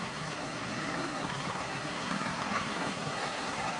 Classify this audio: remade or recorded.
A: remade